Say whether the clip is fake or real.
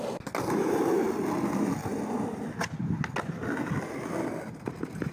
real